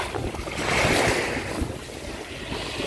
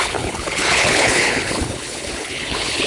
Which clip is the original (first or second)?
first